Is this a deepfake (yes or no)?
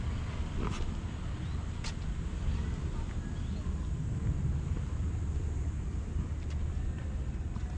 no